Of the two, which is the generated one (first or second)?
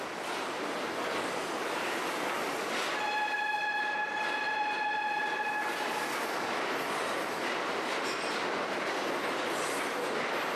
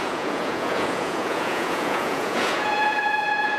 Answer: second